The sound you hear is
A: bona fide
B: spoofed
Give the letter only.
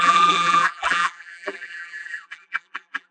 B